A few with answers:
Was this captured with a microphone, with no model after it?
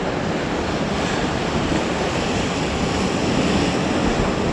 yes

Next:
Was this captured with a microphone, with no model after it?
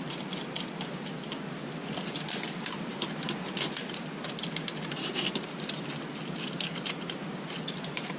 yes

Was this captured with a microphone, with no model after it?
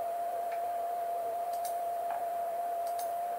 no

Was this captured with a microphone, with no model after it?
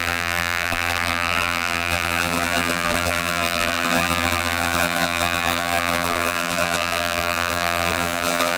no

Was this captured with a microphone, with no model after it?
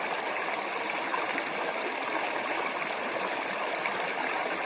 no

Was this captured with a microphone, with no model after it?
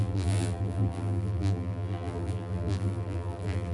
no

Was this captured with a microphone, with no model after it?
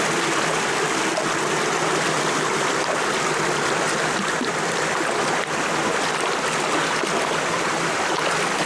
yes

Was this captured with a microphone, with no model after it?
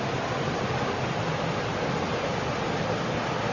yes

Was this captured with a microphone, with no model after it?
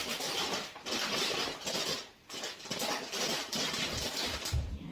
yes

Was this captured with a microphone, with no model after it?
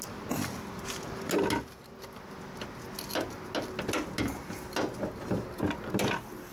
yes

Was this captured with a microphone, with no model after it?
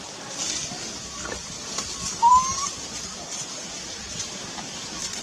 yes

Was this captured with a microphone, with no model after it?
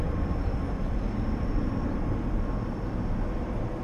yes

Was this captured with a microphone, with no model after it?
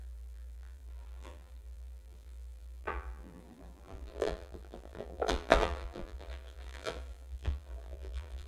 no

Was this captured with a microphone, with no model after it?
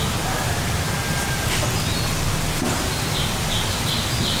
yes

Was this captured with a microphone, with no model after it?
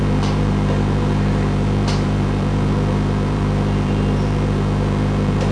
no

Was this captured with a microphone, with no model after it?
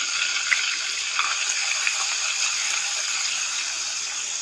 no